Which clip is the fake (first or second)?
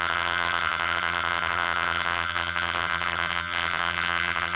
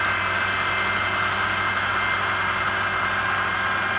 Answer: first